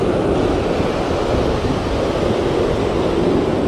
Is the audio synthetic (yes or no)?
no